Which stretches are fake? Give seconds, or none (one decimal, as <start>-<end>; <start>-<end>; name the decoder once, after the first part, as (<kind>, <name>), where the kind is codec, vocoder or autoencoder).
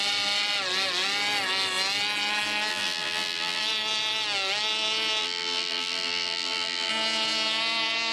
2.7-3.6 (vocoder, BigVGAN v2); 5.2-6.9